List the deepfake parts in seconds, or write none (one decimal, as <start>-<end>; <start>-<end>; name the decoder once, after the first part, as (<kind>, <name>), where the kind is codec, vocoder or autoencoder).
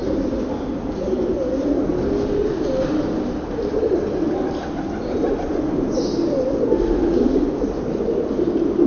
none